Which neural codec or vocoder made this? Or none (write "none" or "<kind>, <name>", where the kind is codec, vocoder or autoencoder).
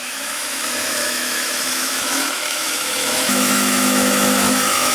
autoencoder, DAC-VAE